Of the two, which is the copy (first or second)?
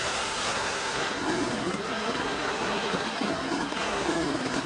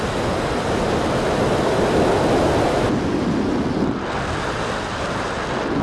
first